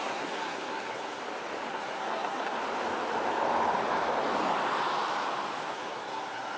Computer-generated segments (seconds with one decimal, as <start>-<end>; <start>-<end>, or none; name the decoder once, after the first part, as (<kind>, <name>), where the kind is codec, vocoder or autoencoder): 0.0-1.2 (codec, SNAC); 1.7-2.6; 5.7-6.6